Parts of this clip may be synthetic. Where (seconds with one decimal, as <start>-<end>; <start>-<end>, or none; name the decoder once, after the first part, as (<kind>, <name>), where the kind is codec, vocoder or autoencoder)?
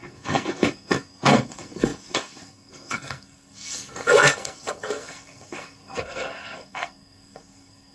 0.0-7.9 (codec, SNAC)